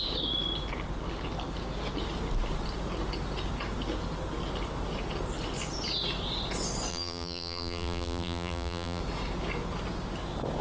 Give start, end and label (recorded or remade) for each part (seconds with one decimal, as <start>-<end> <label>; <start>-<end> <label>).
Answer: 0.0-6.9 recorded; 6.9-9.0 remade; 9.0-10.6 recorded